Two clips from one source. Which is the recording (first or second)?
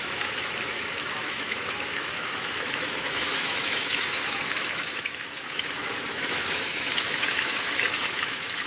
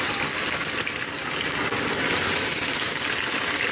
second